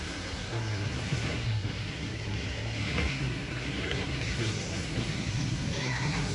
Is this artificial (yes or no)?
yes